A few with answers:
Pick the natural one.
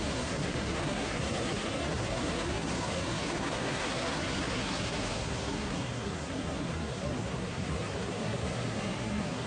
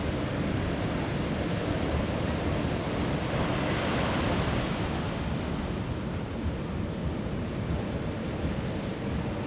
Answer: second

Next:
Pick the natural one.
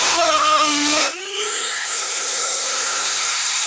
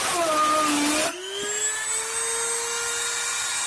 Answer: second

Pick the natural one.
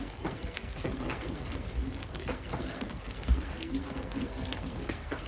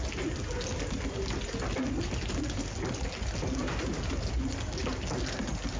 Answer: second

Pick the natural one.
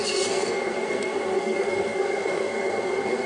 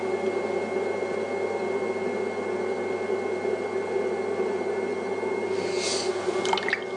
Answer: second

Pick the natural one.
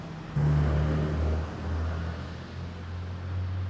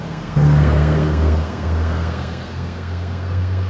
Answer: first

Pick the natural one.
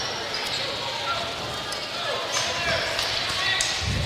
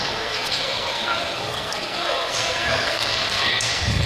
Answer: first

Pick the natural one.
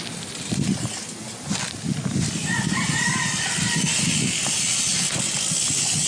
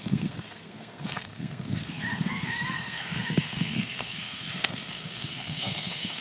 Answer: first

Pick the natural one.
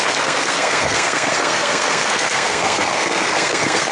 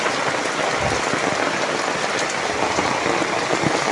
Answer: second